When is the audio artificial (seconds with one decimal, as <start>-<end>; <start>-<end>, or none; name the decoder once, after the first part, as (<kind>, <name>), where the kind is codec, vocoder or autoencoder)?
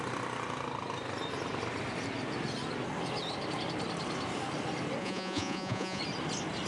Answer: 5.0-6.0 (vocoder, Vocos)